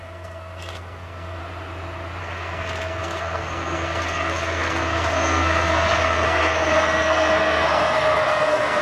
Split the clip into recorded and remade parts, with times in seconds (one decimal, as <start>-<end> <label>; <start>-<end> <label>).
0.0-1.4 remade; 1.4-2.2 recorded; 2.2-8.8 remade